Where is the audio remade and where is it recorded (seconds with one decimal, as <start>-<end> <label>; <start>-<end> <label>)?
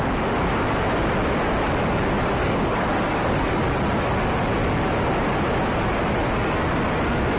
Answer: 0.0-2.4 recorded; 2.4-3.8 remade; 3.8-7.4 recorded